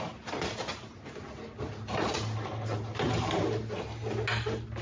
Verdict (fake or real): real